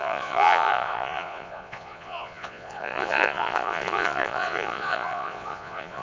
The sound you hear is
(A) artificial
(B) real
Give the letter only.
A